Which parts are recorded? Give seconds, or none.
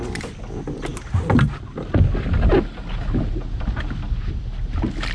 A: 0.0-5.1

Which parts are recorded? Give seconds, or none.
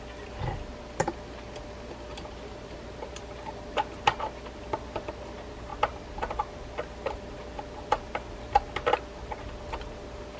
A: 0.0-2.1; 3.1-10.4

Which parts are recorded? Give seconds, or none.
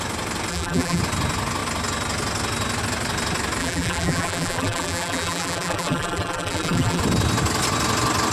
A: 0.0-0.5; 1.0-3.6; 7.0-8.3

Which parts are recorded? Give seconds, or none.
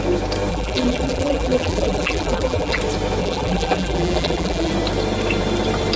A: 0.0-0.5; 2.8-3.2; 4.7-6.0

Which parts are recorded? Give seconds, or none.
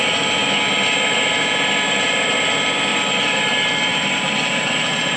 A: 0.0-2.9; 3.4-3.9; 4.7-5.2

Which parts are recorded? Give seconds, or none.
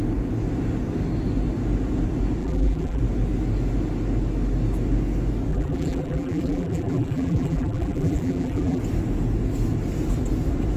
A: 0.0-2.4; 3.0-5.5; 8.8-10.8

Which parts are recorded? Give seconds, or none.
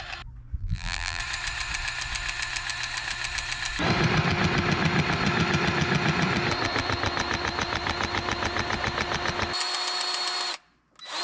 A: 0.0-0.6; 1.2-11.2